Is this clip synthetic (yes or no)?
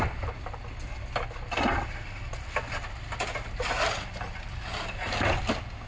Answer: no